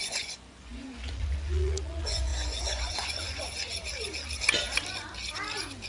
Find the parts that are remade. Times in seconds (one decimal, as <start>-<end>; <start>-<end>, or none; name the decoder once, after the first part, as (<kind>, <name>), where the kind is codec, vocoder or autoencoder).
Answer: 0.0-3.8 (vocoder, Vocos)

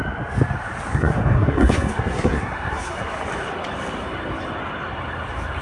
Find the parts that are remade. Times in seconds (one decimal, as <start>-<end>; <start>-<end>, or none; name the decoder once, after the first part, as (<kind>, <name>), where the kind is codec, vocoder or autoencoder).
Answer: 0.9-3.1 (codec, SNAC)

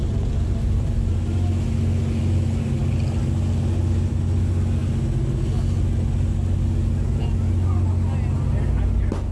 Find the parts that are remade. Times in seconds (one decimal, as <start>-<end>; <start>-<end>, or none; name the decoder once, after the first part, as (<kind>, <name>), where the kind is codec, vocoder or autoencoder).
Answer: 0.0-1.2 (vocoder, BigVGAN v2)

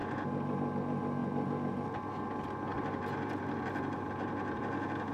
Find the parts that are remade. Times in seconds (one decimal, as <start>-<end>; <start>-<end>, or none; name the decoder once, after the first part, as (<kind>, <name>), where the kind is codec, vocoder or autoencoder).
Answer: 2.7-4.6 (vocoder, BigVGAN v2)

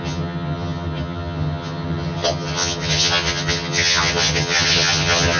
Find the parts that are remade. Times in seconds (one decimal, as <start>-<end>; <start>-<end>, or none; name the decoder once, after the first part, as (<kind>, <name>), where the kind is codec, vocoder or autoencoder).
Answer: 0.0-5.4 (vocoder, HiFi-GAN)

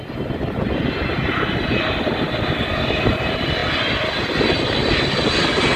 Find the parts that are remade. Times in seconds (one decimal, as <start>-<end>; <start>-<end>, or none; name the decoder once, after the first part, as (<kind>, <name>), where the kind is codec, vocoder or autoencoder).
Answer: none